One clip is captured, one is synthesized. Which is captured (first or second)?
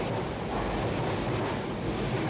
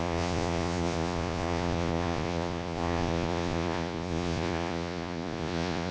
first